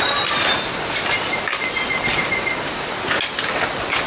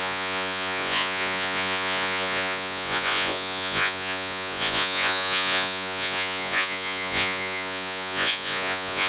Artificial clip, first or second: second